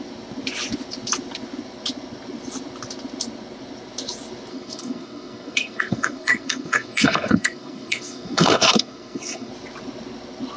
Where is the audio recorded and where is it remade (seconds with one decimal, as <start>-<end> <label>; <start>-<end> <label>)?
0.0-4.5 recorded; 4.5-9.5 remade; 9.5-10.6 recorded